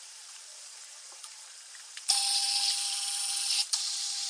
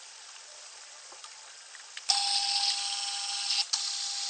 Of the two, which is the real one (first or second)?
second